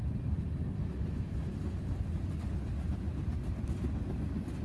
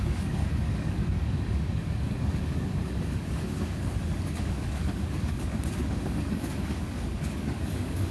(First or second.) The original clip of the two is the first